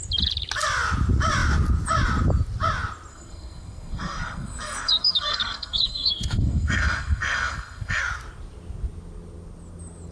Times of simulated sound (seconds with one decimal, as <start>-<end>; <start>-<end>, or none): 3.1-8.0